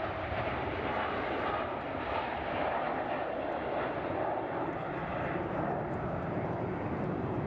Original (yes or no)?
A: yes